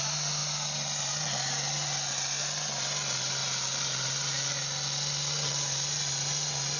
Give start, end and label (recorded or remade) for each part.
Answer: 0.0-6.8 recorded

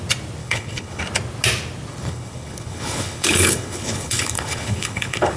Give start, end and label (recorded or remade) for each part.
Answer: 0.0-0.4 recorded; 0.4-1.0 remade; 1.0-1.9 recorded; 1.9-5.4 remade

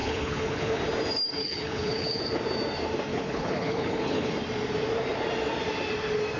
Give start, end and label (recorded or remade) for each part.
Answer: 0.0-0.8 remade; 0.8-1.4 recorded; 1.4-2.2 remade; 2.2-3.1 recorded; 3.1-4.3 remade; 4.3-6.4 recorded

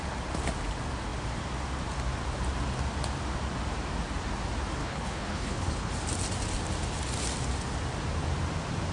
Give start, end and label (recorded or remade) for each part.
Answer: 0.0-4.8 recorded; 4.8-5.9 remade; 5.9-8.9 recorded

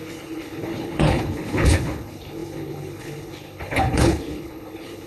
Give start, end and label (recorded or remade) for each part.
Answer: 0.0-5.1 remade

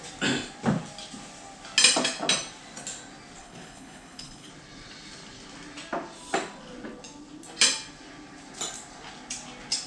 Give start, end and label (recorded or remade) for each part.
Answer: 0.0-3.4 recorded; 3.4-4.5 remade; 4.5-9.9 recorded

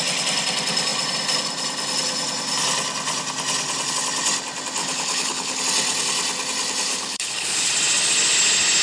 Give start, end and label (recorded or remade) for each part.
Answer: 0.0-4.8 recorded; 4.8-5.6 remade; 5.6-6.9 recorded; 6.9-7.7 remade; 7.7-8.8 recorded